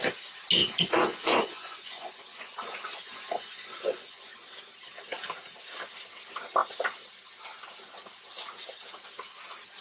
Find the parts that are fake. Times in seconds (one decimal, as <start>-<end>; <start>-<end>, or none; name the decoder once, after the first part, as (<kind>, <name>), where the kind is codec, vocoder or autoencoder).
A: 0.6-4.3 (vocoder, Vocos)